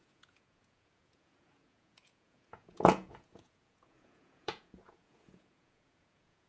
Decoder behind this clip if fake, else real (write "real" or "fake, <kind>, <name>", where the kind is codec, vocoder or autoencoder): fake, vocoder, Vocos